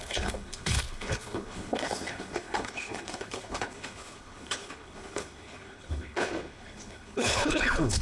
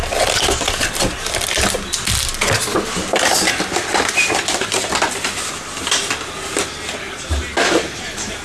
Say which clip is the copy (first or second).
first